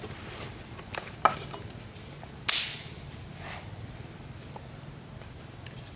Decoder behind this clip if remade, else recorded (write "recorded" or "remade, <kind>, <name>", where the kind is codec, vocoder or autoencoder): recorded